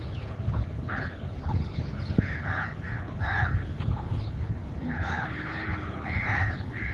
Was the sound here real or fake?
fake